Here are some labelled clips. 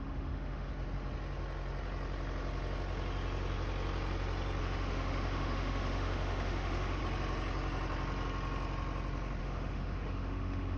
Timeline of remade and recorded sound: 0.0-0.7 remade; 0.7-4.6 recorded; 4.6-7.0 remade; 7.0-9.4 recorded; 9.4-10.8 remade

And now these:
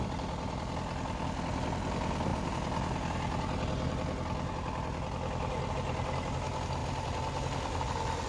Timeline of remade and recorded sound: 0.0-8.3 recorded